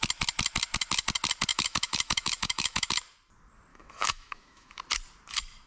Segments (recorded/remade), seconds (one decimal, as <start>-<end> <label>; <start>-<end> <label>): 0.0-1.5 recorded; 1.5-2.9 remade; 2.9-3.7 recorded; 3.7-4.8 remade; 4.8-5.7 recorded